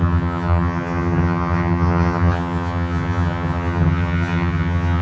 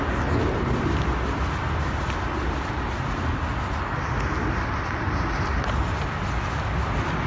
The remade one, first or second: first